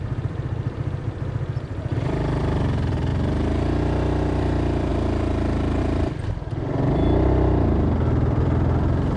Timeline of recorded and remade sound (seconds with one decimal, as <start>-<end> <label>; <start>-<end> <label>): 0.0-3.1 remade; 3.1-4.3 recorded; 4.3-4.9 remade; 4.9-5.8 recorded; 5.8-9.2 remade